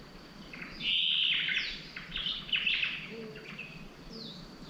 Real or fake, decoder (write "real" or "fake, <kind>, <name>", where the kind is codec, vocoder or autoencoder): real